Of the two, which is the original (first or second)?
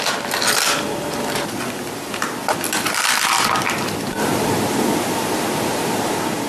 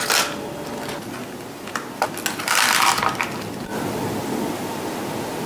second